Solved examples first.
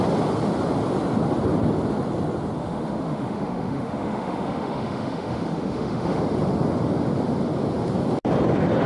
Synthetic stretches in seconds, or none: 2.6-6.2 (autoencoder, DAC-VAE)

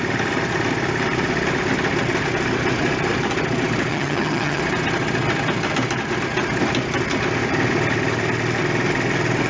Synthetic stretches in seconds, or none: 3.9-4.6 (vocoder, HiFi-GAN)